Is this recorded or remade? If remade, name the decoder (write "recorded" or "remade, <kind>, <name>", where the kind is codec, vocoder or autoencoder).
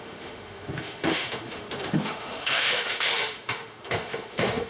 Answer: remade, autoencoder, DAC-VAE